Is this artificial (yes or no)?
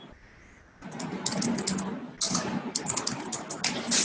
no